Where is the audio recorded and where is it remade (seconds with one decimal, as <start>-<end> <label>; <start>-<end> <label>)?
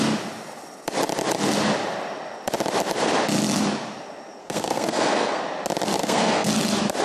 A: 0.0-4.4 recorded; 4.4-5.4 remade; 5.4-6.0 recorded; 6.0-6.5 remade; 6.5-7.0 recorded